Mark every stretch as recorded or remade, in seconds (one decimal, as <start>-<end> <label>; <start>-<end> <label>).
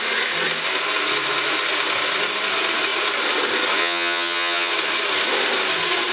0.0-3.8 recorded; 3.8-4.7 remade; 4.7-6.1 recorded